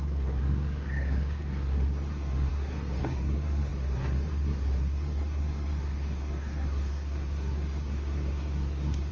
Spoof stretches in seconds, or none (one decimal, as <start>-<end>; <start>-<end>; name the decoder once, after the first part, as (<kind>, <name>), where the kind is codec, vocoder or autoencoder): 0.0-9.1 (codec, SNAC)